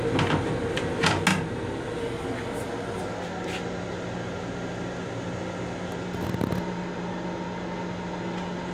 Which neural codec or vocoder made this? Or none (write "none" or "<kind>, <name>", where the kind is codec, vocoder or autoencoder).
none